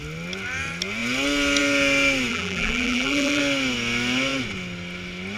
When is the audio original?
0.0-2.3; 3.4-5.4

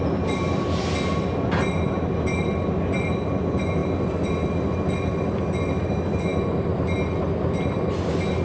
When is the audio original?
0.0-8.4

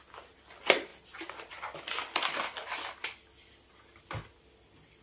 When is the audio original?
0.0-5.0